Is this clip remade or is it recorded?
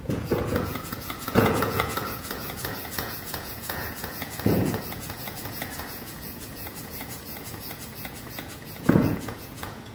remade